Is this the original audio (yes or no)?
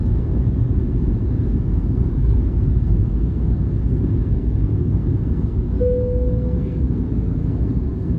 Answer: no